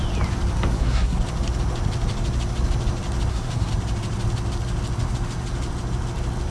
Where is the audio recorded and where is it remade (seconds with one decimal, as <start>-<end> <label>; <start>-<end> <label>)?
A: 0.0-0.7 recorded; 0.7-1.2 remade; 1.2-3.3 recorded; 3.3-3.7 remade; 3.7-6.5 recorded